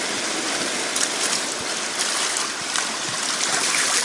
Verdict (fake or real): real